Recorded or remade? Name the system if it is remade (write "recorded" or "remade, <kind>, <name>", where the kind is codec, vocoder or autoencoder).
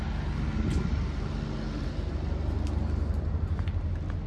recorded